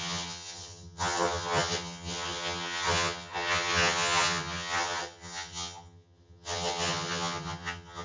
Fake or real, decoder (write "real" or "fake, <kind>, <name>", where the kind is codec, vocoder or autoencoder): fake, vocoder, HiFi-GAN